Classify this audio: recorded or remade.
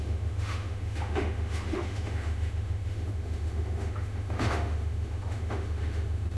remade